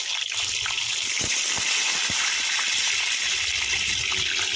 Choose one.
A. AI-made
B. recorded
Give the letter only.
B